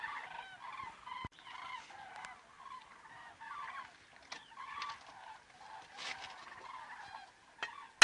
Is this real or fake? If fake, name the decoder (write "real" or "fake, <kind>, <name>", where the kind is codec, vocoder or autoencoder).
real